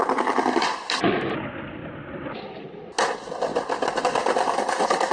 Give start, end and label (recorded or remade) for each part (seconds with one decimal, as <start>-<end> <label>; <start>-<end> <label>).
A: 0.0-1.8 recorded; 1.8-2.8 remade; 2.8-3.5 recorded; 3.5-4.0 remade; 4.0-5.1 recorded